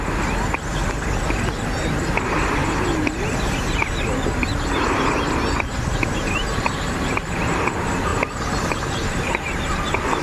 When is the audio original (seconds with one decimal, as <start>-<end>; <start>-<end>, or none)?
0.0-6.5; 7.6-8.1; 9.3-10.2